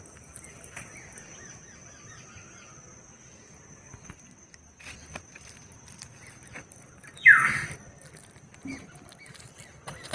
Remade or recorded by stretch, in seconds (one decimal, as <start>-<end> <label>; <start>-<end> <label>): 0.0-10.1 recorded

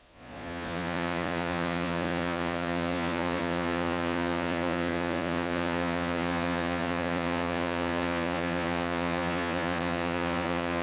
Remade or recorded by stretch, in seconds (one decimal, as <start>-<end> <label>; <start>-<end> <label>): 0.0-10.8 remade

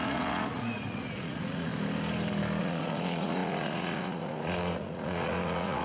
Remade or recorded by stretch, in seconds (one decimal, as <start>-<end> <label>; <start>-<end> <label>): 0.0-1.7 remade; 1.7-2.6 recorded; 2.6-5.8 remade

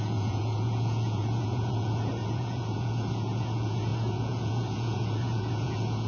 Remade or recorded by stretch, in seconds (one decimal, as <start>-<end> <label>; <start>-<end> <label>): 0.0-6.1 remade

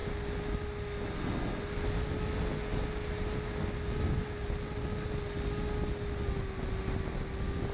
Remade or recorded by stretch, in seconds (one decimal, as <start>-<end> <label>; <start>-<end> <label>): 0.0-7.7 recorded

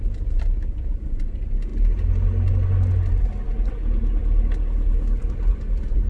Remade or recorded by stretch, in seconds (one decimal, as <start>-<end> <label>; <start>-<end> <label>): 0.0-6.1 recorded